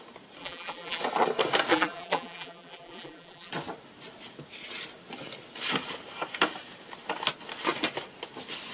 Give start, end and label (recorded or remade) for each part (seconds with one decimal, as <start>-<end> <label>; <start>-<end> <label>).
0.0-0.4 recorded; 0.4-1.0 remade; 1.0-1.7 recorded; 1.7-3.5 remade; 3.5-8.7 recorded